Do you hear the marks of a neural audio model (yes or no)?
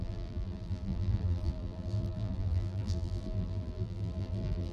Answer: yes